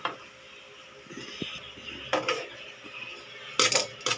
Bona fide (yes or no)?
yes